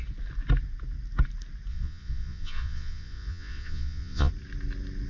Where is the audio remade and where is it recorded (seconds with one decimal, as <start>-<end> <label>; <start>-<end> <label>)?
0.0-1.7 recorded; 1.7-4.3 remade; 4.3-5.1 recorded